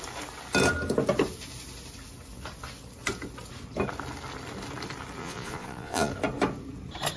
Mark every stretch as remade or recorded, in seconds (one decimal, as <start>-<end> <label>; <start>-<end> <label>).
0.0-5.2 recorded; 5.2-6.1 remade; 6.1-7.2 recorded